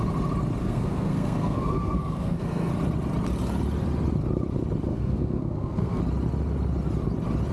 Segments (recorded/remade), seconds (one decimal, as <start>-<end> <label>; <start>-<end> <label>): 0.0-0.6 recorded; 0.6-2.7 remade; 2.7-4.9 recorded; 4.9-6.0 remade; 6.0-7.5 recorded